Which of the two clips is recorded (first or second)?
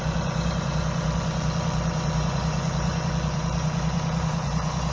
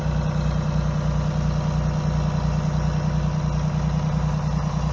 second